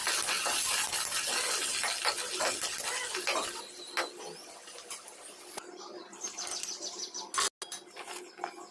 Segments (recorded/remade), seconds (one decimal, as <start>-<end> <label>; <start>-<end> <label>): 0.0-8.7 recorded